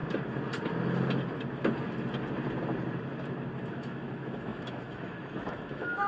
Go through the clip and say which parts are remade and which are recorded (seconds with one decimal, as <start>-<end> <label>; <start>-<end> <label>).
0.0-3.7 recorded; 3.7-6.1 remade